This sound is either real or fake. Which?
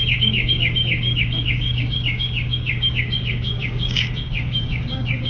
fake